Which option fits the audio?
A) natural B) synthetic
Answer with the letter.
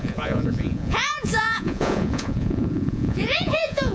B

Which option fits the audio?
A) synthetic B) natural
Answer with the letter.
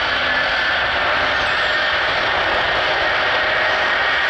B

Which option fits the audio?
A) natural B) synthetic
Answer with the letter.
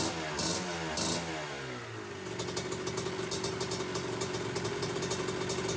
A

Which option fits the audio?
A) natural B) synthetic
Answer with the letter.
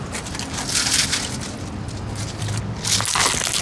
A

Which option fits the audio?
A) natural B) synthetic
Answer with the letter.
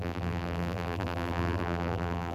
B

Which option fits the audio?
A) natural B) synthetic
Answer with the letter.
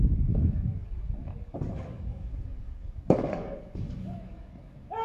B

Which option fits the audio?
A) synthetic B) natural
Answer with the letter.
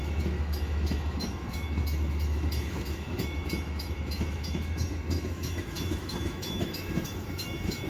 A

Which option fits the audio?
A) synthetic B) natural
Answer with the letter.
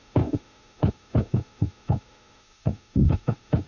A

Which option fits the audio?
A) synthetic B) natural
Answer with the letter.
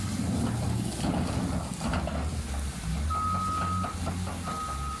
B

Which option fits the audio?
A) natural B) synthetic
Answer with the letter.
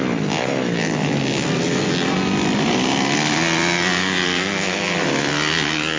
A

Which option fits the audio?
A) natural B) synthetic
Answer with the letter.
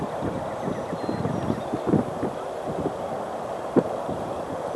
A